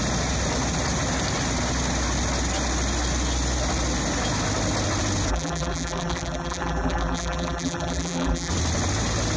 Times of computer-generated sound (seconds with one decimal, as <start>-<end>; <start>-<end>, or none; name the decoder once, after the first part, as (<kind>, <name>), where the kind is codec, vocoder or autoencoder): 5.3-8.5 (vocoder, BigVGAN v2)